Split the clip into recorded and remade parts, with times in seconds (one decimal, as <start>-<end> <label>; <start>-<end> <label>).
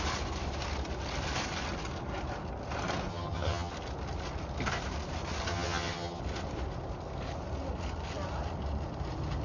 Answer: 0.0-3.1 recorded; 3.1-3.7 remade; 3.7-5.5 recorded; 5.5-6.2 remade; 6.2-9.4 recorded